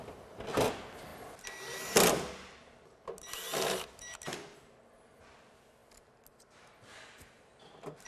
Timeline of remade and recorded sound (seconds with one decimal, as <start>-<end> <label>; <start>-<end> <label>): 0.0-8.1 recorded

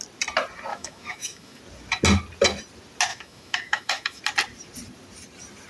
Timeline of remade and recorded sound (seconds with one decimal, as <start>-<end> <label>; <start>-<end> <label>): 0.0-0.7 recorded; 0.7-1.6 remade; 1.6-3.1 recorded; 3.1-4.2 remade; 4.2-5.7 recorded

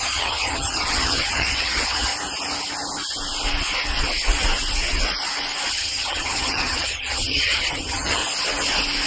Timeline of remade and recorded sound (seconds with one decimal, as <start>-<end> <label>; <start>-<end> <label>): 0.0-2.1 remade; 2.1-5.7 recorded; 5.7-8.2 remade; 8.2-9.1 recorded

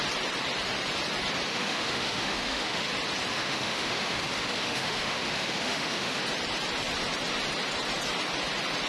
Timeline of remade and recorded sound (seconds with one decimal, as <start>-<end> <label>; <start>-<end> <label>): 0.0-1.5 recorded; 1.5-2.9 remade; 2.9-3.3 recorded; 3.3-6.2 remade; 6.2-8.9 recorded

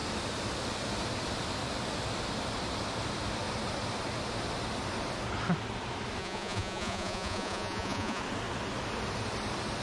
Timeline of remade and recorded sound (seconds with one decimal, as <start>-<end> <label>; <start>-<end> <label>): 0.0-6.2 recorded; 6.2-8.2 remade; 8.2-9.8 recorded

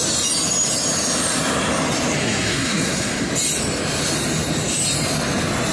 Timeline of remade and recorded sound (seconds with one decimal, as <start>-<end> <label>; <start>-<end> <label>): 0.0-2.2 recorded; 2.2-3.3 remade; 3.3-5.7 recorded